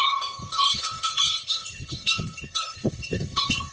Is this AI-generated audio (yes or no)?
yes